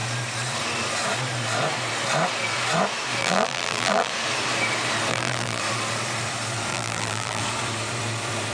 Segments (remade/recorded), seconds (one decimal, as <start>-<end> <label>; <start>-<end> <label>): 0.0-3.2 recorded; 3.2-4.1 remade; 4.1-5.1 recorded; 5.1-5.6 remade; 5.6-6.7 recorded; 6.7-7.4 remade; 7.4-8.5 recorded